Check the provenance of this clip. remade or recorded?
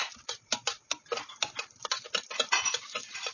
recorded